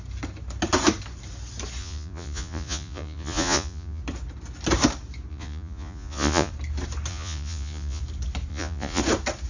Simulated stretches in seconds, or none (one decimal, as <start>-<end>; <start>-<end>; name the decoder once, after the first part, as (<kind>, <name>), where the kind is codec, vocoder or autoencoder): 1.8-4.0 (vocoder, Vocos); 5.3-6.5; 7.1-8.0; 8.5-9.0